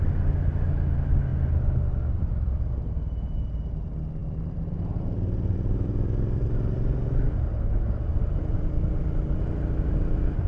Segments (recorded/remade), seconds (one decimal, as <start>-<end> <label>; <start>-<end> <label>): 0.0-1.3 recorded; 1.3-2.7 remade; 2.7-4.2 recorded; 4.2-7.4 remade; 7.4-10.5 recorded